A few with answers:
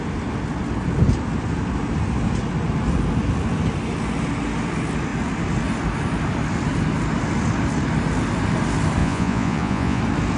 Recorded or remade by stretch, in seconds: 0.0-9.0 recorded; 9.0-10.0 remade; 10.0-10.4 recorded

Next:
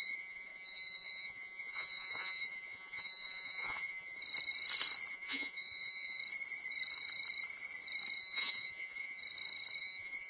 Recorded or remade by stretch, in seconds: 0.0-4.2 remade; 4.2-5.1 recorded; 5.1-6.2 remade; 6.2-8.2 recorded; 8.2-9.2 remade; 9.2-9.8 recorded; 9.8-10.3 remade

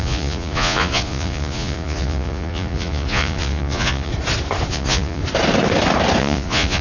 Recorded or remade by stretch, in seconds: 0.0-4.1 remade; 4.1-4.7 recorded; 4.7-5.2 remade; 5.2-6.2 recorded; 6.2-6.8 remade